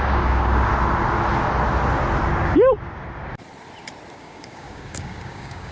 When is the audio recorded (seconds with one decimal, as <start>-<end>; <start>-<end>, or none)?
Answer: 0.7-4.1